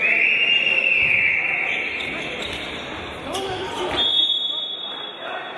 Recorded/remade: recorded